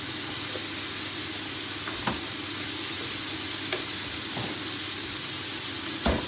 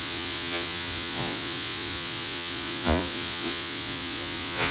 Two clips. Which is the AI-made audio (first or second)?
second